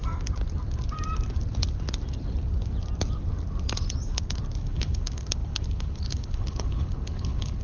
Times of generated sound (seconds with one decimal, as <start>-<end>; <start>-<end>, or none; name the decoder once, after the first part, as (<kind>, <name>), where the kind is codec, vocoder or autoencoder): 4.6-7.6 (codec, HILCodec)

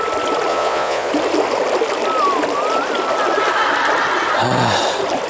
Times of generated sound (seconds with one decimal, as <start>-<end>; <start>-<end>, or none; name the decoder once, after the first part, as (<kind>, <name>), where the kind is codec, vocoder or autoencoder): 0.5-1.1 (vocoder, Vocos)

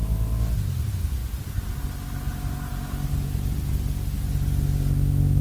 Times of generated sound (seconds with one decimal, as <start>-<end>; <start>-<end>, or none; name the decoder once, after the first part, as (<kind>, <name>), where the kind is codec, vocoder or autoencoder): none

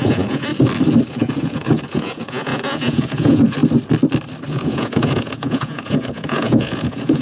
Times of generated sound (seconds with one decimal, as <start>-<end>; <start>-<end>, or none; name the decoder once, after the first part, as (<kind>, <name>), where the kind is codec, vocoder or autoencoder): 0.0-0.5 (vocoder, Vocos); 1.1-3.6; 4.5-7.2

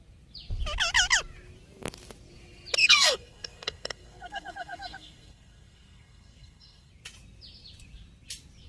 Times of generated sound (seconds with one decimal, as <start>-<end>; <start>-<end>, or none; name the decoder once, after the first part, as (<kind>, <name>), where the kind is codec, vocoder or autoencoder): 2.8-6.9 (codec, SNAC)

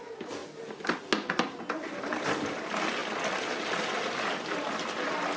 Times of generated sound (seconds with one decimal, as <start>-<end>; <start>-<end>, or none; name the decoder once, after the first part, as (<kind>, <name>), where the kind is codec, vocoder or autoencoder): none

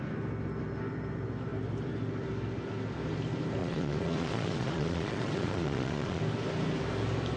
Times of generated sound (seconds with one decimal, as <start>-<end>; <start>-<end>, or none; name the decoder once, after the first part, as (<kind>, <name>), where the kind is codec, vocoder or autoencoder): 3.6-6.2 (vocoder, Vocos)

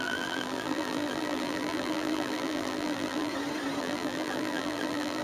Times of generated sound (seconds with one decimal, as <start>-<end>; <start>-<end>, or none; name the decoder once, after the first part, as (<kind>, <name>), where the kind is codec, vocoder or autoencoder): 0.0-3.3 (vocoder, BigVGAN v2); 3.8-5.2